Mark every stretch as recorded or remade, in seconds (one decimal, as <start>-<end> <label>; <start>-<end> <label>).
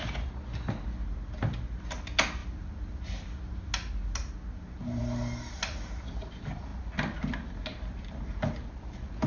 0.0-9.3 recorded